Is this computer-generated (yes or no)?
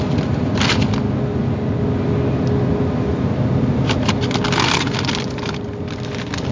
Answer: no